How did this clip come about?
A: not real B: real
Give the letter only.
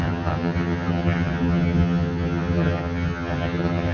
A